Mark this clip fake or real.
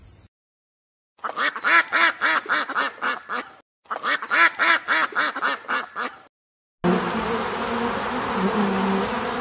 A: real